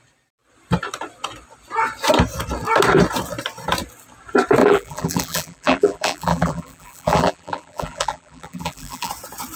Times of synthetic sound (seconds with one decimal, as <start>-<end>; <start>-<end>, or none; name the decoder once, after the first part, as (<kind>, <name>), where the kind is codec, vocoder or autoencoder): 4.6-9.1 (vocoder, BigVGAN v2)